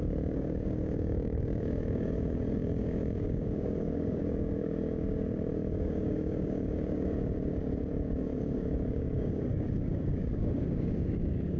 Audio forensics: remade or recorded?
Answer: remade